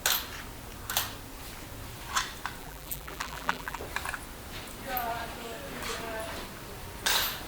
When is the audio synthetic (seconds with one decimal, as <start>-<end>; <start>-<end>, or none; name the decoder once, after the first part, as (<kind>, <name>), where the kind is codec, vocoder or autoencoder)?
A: 2.6-3.8 (vocoder, BigVGAN v2)